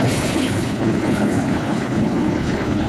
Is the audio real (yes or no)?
no